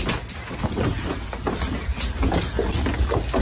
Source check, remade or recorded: recorded